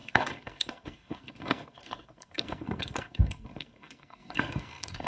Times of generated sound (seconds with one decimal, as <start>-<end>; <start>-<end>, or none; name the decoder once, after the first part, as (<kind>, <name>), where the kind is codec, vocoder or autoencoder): 0.0-5.1 (codec, SNAC)

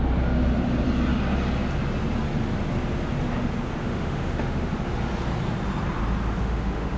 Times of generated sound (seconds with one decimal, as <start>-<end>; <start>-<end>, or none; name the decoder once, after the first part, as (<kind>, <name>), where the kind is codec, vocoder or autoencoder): 3.8-4.7 (autoencoder, DAC-VAE); 6.4-7.0

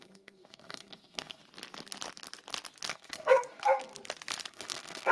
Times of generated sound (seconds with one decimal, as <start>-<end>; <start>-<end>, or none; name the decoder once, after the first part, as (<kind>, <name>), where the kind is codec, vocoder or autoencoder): 0.0-1.4 (codec, SNAC); 2.9-3.9; 4.5-5.1

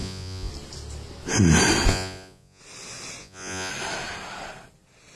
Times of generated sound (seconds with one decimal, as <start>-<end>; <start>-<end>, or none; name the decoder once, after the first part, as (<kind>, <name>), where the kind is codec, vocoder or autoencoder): 0.0-0.5 (vocoder, Vocos); 1.9-2.6; 3.2-3.7